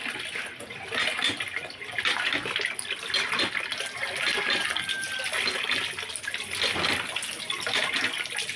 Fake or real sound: real